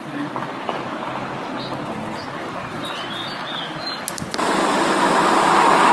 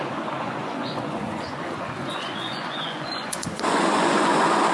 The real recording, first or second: first